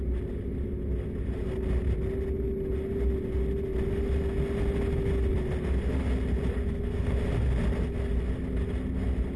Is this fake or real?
real